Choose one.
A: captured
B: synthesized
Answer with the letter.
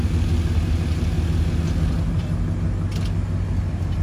A